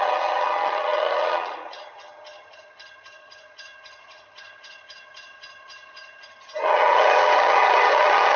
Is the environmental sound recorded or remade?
remade